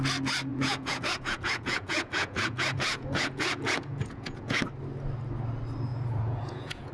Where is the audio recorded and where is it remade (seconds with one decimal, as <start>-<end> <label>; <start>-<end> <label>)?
0.0-0.5 recorded; 0.5-4.6 remade; 4.6-5.9 recorded; 5.9-6.9 remade